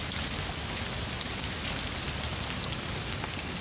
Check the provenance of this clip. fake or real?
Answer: real